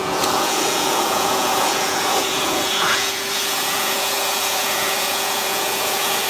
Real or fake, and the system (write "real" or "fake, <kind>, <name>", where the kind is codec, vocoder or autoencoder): fake, vocoder, Vocos